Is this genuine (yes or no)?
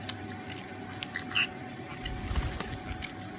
yes